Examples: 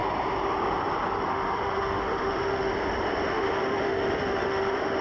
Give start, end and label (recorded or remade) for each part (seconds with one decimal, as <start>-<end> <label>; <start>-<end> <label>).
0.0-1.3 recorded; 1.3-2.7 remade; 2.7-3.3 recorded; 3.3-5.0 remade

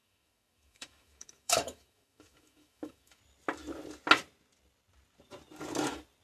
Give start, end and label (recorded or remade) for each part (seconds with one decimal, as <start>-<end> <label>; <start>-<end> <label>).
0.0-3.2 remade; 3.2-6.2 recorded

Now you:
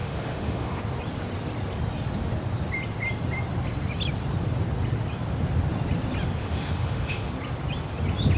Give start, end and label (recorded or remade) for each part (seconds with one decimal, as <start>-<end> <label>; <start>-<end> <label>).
0.0-0.8 remade; 0.8-6.4 recorded; 6.4-7.3 remade; 7.3-8.4 recorded